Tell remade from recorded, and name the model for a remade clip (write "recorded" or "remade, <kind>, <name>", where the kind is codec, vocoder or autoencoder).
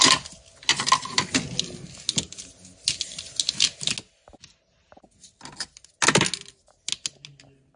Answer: recorded